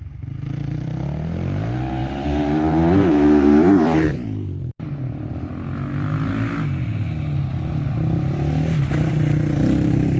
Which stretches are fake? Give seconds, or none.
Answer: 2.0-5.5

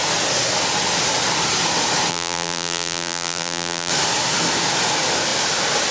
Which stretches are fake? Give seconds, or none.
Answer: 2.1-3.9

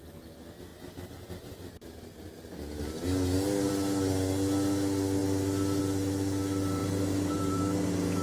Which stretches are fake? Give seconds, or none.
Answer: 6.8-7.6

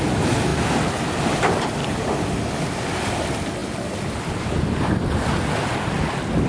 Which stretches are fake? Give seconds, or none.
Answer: 0.0-0.5; 1.3-1.8; 2.3-6.5